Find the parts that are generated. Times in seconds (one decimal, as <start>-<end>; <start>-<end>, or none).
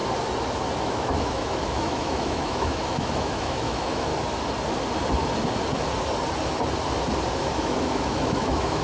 0.8-4.1; 7.4-8.8